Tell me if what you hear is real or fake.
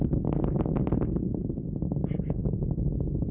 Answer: real